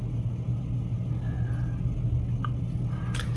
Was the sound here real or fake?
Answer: real